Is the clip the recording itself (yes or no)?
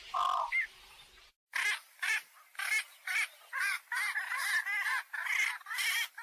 yes